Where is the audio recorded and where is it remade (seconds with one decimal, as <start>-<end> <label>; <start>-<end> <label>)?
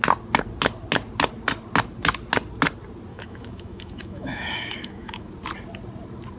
0.0-3.1 recorded; 3.1-5.3 remade; 5.3-6.4 recorded